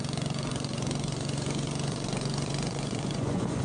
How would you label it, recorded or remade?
remade